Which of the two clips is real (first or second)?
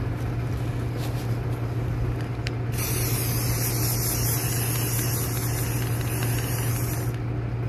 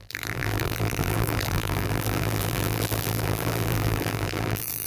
first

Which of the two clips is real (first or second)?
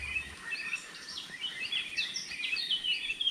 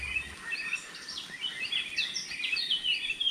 second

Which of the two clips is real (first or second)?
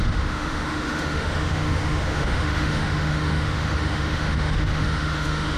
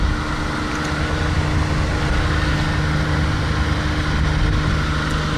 second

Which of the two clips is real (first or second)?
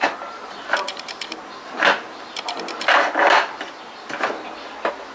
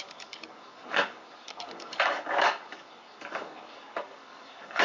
first